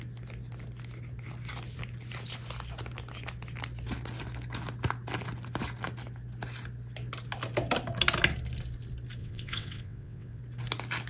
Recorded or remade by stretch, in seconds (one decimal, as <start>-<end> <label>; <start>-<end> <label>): 0.0-9.2 recorded; 9.2-10.4 remade; 10.4-11.1 recorded